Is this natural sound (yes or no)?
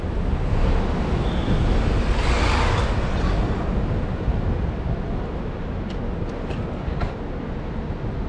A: yes